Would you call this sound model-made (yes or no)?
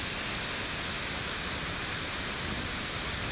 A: no